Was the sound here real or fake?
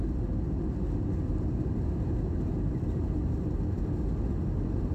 real